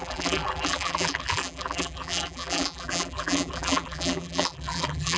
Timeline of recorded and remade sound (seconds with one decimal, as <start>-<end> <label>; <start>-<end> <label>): 0.0-5.2 remade